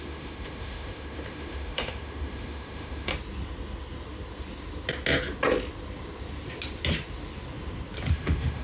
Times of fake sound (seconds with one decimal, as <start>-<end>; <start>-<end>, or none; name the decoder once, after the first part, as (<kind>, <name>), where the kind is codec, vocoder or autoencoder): 0.0-3.1 (autoencoder, DAC-VAE); 8.1-8.6